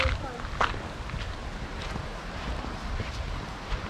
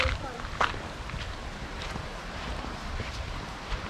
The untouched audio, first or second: first